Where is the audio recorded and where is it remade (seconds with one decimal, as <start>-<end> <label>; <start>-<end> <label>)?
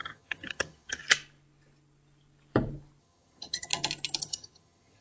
0.0-1.0 remade; 1.0-3.0 recorded; 3.0-3.7 remade; 3.7-4.2 recorded; 4.2-5.0 remade